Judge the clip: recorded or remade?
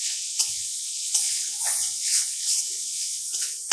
remade